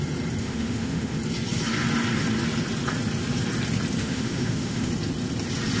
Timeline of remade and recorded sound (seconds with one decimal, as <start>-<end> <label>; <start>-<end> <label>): 0.0-0.4 recorded; 0.4-1.2 remade; 1.2-4.0 recorded; 4.0-4.9 remade; 4.9-5.8 recorded